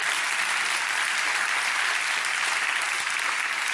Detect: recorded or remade recorded